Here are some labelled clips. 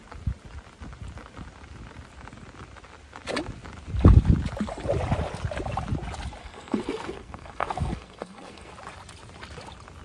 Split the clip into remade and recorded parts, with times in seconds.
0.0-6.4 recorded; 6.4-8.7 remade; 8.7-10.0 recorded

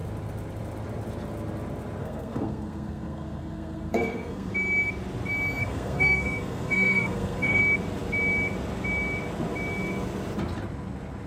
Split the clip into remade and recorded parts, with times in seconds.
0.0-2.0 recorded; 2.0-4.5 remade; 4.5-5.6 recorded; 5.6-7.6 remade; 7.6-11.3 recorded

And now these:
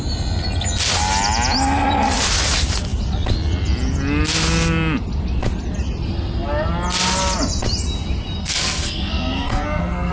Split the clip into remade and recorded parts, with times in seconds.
0.0-8.4 recorded; 8.4-10.1 remade